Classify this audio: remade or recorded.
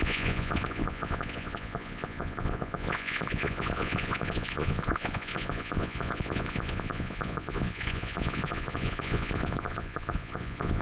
remade